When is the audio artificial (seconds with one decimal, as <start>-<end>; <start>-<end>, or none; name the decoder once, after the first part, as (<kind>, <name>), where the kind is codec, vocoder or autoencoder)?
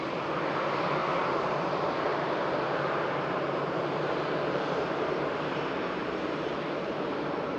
1.0-1.7 (vocoder, BigVGAN v2); 2.1-5.6; 6.0-7.1